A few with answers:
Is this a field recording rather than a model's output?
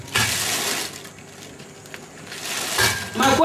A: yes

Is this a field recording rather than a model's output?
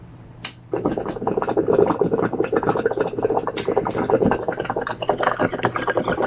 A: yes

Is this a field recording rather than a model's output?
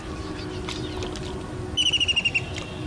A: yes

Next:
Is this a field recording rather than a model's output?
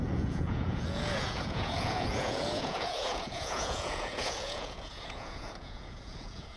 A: no